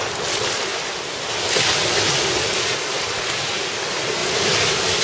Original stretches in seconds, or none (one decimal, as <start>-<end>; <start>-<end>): 0.0-4.2